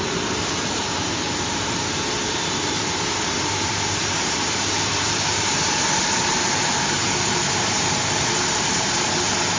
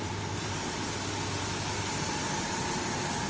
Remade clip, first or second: first